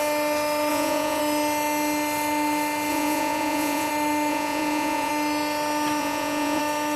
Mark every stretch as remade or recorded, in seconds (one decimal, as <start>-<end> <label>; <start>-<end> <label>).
0.0-0.7 recorded; 0.7-1.2 remade; 1.2-2.9 recorded; 2.9-3.9 remade; 3.9-4.3 recorded; 4.3-5.1 remade; 5.1-6.0 recorded; 6.0-6.6 remade; 6.6-7.0 recorded